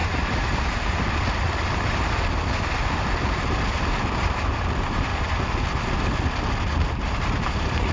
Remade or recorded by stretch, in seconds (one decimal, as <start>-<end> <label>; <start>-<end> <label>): 0.0-3.9 recorded; 3.9-5.1 remade; 5.1-6.8 recorded; 6.8-7.9 remade

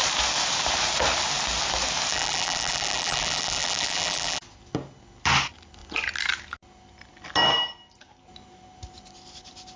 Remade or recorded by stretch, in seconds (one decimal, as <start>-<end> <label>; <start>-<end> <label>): 0.0-2.1 recorded; 2.1-4.4 remade; 4.4-9.8 recorded

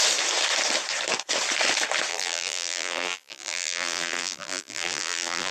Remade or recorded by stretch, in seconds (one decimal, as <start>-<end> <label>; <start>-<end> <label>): 0.0-2.1 recorded; 2.1-5.5 remade

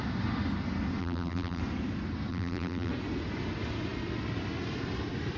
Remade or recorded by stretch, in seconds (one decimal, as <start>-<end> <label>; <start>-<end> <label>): 0.0-1.0 recorded; 1.0-1.6 remade; 1.6-2.3 recorded; 2.3-2.9 remade; 2.9-5.4 recorded

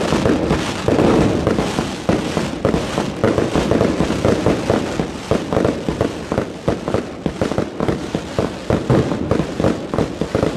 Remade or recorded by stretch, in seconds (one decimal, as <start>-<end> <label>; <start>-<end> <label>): 0.0-10.6 recorded

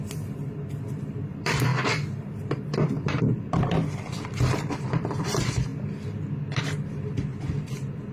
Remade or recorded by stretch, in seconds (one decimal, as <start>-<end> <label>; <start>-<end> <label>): 0.0-1.7 remade; 1.7-2.4 recorded; 2.4-5.7 remade; 5.7-6.6 recorded; 6.6-8.1 remade

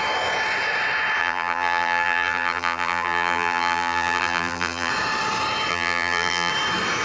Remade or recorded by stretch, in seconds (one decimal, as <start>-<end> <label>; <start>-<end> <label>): 0.0-1.2 recorded; 1.2-4.9 remade; 4.9-5.7 recorded; 5.7-6.5 remade; 6.5-7.0 recorded

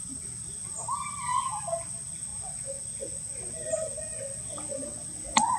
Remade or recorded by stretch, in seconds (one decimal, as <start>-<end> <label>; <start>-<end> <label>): 0.0-5.6 recorded